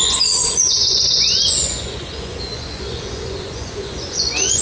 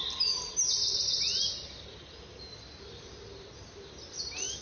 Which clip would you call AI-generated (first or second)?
first